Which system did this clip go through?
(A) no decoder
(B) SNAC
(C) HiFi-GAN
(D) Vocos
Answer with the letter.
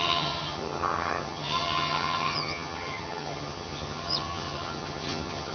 C